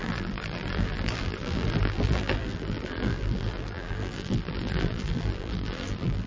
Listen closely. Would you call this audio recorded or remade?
remade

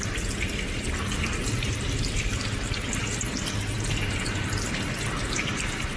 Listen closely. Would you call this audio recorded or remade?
recorded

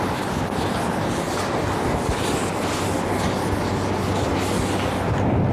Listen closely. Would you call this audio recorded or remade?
recorded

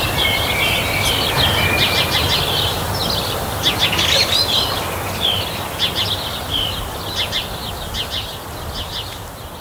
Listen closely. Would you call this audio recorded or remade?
recorded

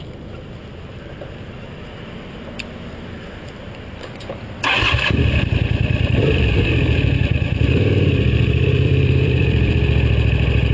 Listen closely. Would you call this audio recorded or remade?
remade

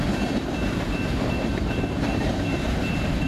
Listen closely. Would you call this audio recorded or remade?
remade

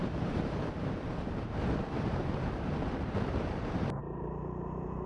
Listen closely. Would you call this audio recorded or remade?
remade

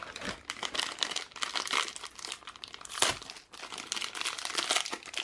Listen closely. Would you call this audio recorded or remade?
recorded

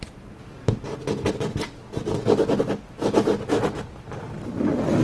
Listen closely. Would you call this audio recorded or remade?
recorded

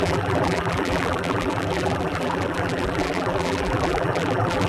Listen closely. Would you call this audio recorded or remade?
remade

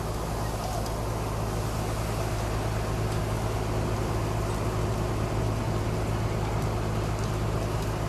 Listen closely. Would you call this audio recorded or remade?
recorded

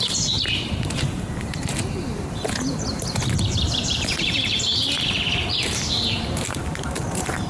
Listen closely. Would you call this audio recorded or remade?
remade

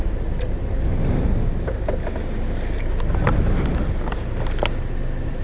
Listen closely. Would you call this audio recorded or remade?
recorded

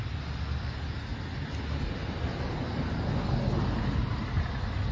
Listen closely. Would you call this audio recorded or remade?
recorded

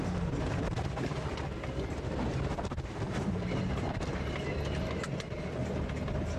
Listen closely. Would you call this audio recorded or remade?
recorded